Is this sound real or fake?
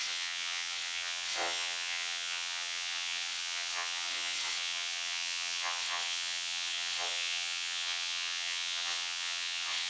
fake